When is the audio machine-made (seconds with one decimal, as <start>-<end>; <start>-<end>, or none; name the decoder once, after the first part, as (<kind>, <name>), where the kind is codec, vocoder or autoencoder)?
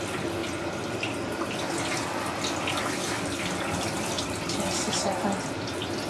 none